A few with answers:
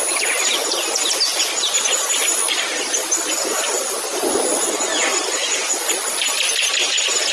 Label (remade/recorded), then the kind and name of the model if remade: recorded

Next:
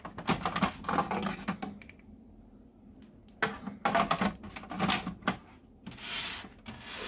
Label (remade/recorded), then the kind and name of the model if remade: recorded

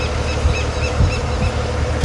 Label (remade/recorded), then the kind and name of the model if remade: recorded